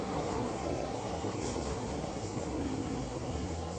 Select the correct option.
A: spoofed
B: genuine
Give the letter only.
A